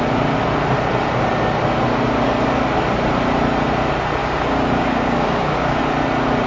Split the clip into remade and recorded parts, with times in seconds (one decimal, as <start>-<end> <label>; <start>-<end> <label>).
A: 0.0-4.2 recorded; 4.2-5.8 remade; 5.8-6.5 recorded